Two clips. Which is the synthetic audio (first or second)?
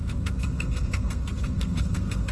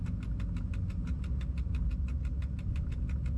first